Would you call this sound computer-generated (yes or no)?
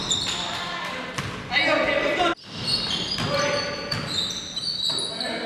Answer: no